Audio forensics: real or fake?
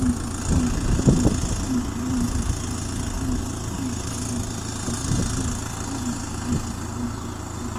real